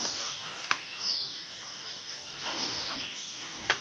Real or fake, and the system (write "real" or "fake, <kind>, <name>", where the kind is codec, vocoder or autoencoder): fake, codec, DAC